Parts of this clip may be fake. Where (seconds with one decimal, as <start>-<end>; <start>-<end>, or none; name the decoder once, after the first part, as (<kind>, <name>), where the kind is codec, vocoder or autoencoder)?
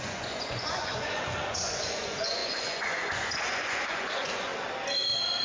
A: 0.0-4.5 (vocoder, Vocos)